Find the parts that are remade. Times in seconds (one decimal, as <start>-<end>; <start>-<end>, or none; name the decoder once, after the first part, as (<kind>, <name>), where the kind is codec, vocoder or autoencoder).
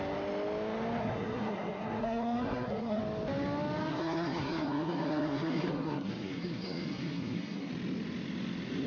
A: 1.0-3.0 (codec, SNAC); 3.9-7.7